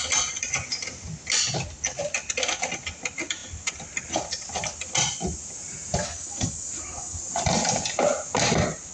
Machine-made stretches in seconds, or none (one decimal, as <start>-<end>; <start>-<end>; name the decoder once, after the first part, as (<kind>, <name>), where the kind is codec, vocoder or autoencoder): 6.0-7.2 (codec, DAC)